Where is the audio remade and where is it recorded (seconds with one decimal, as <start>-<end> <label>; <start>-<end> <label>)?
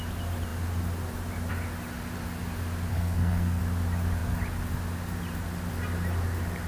0.0-2.9 recorded; 2.9-3.6 remade; 3.6-6.7 recorded